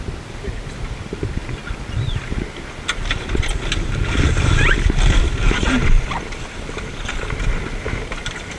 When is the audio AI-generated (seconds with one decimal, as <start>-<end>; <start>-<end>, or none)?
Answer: none